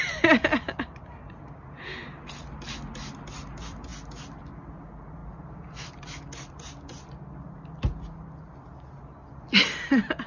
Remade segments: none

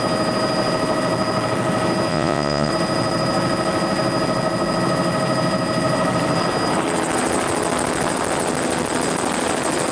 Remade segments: 2.1-2.7 (vocoder, Vocos)